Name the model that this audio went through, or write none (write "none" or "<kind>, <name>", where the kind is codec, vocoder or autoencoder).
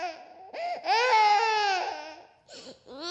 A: none